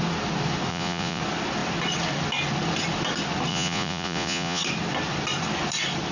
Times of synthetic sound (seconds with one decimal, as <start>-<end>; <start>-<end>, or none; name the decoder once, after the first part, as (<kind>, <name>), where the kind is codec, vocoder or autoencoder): 0.7-1.2 (vocoder, Vocos); 3.5-4.6